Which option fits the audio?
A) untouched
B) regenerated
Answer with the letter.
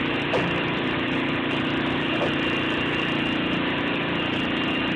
A